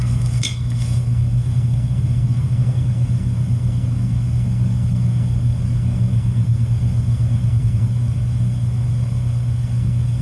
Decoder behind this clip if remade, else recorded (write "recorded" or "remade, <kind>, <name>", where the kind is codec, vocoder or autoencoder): remade, codec, SNAC